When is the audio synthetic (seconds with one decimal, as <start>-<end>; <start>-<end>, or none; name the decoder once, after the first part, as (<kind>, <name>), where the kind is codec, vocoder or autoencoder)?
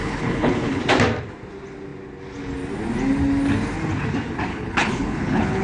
0.0-0.8 (codec, HILCodec); 4.5-5.6